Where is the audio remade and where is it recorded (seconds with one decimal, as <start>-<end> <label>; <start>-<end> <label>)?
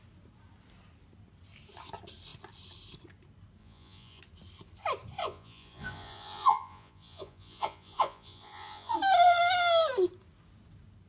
0.0-3.6 recorded; 3.6-4.2 remade; 4.2-5.2 recorded; 5.2-9.0 remade; 9.0-11.1 recorded